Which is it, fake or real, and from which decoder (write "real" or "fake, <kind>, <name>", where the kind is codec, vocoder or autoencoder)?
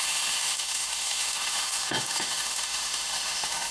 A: fake, autoencoder, DAC-VAE